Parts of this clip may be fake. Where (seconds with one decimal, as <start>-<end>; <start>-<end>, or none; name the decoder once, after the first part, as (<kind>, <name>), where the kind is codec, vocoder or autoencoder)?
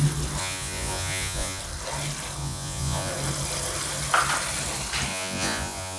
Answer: 0.4-1.6 (vocoder, Vocos); 2.4-3.1; 5.1-6.0